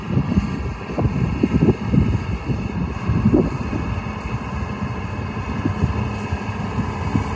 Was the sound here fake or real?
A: real